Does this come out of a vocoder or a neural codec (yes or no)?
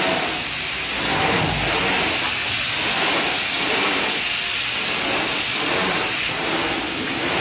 no